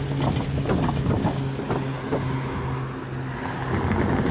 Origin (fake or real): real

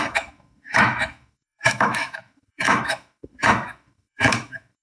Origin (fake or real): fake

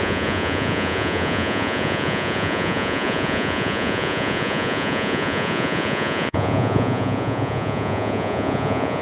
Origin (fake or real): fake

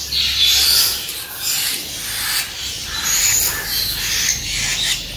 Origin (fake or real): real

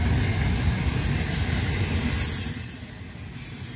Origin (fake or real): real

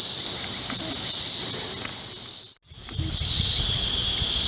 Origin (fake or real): real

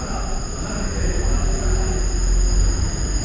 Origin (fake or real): real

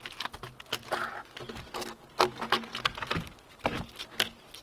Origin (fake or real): real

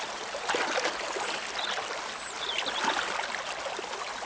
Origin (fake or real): real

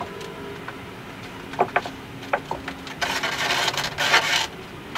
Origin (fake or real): real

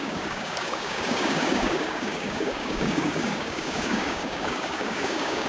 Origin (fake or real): fake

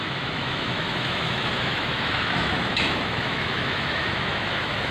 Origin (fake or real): fake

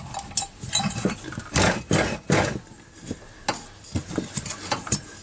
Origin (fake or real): real